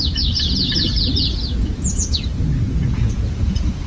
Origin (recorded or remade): remade